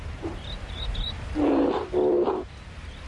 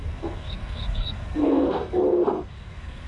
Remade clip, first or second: second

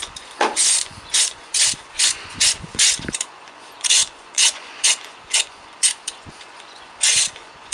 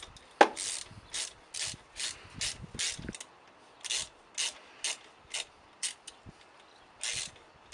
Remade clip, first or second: first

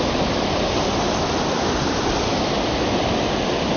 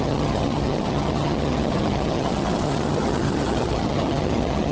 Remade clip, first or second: second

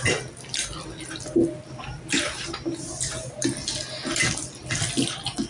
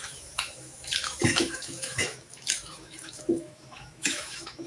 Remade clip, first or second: second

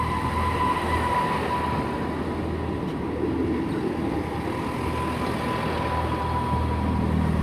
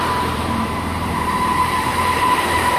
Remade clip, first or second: second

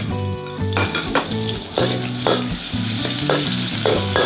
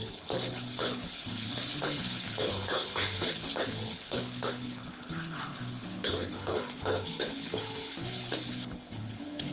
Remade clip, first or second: second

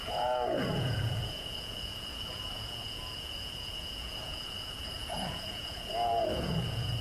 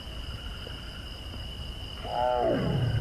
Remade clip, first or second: first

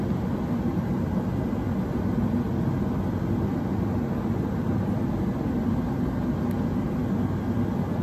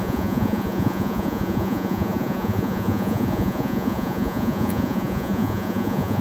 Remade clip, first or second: second